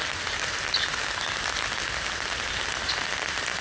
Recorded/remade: recorded